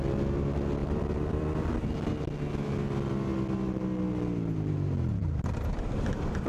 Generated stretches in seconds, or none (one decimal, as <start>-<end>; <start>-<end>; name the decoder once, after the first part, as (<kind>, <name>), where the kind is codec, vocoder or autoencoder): 0.8-1.7 (vocoder, BigVGAN v2)